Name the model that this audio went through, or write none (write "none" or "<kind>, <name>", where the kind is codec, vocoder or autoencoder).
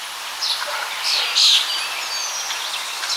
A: none